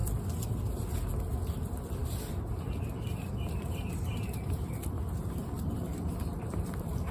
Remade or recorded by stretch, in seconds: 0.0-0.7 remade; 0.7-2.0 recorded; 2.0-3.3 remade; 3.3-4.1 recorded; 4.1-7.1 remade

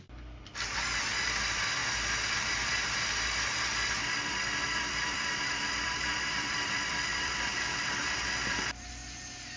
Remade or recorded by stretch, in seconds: 0.0-4.0 recorded; 4.0-8.9 remade; 8.9-9.6 recorded

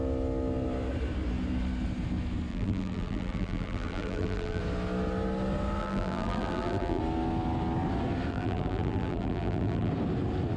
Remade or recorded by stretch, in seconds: 0.0-2.5 recorded; 2.5-4.6 remade; 4.6-5.8 recorded; 5.8-7.0 remade; 7.0-8.3 recorded; 8.3-9.9 remade; 9.9-10.6 recorded

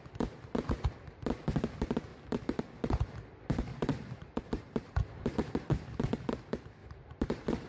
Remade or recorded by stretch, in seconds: 0.0-2.1 recorded; 2.1-2.6 remade; 2.6-3.7 recorded; 3.7-6.0 remade; 6.0-6.8 recorded; 6.8-7.7 remade